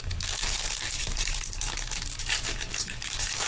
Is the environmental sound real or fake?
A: fake